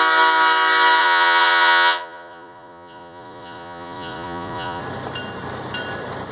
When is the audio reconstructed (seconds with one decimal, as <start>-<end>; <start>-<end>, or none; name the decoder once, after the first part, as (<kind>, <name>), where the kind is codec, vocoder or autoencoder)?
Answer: 1.0-4.8 (vocoder, Vocos)